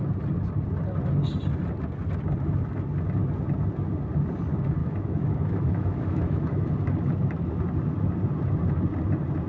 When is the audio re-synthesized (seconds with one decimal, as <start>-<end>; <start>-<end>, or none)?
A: 4.8-6.7